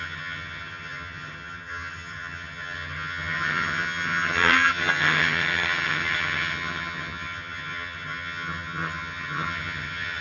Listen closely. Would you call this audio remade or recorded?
remade